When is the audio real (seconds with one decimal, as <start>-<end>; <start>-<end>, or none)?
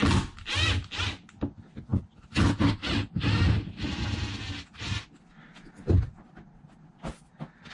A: 0.0-7.7